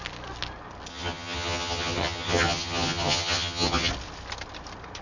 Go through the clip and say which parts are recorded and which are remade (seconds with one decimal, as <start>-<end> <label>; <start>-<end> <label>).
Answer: 0.0-0.9 recorded; 0.9-3.9 remade; 3.9-5.0 recorded